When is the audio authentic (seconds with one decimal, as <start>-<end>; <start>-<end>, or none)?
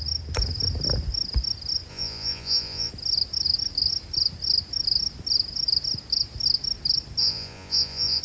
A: 0.0-1.9; 2.9-7.2